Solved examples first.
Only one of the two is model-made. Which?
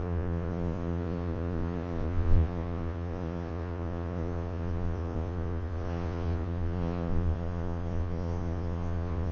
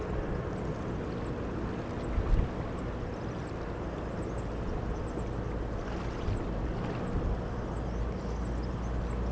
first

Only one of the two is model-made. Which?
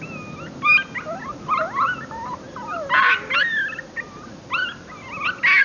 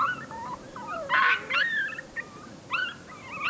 second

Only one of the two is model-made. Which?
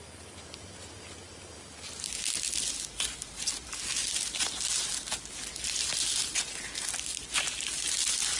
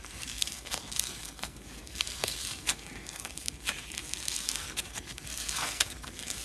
second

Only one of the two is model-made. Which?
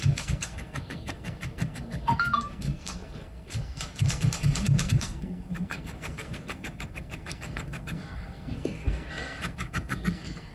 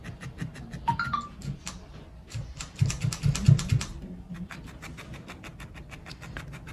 first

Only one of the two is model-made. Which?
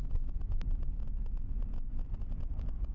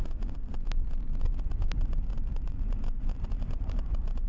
second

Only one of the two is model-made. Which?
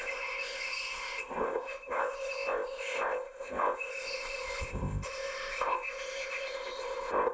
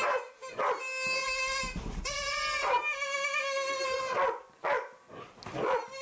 first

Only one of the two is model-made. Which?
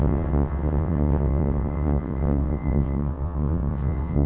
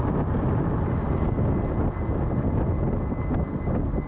first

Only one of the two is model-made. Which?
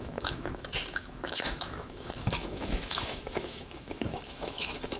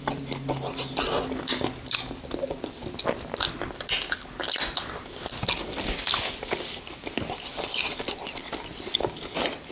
first